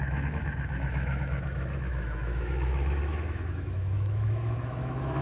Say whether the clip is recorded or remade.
remade